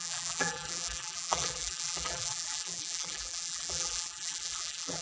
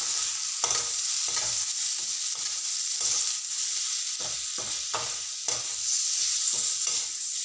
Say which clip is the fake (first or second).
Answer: first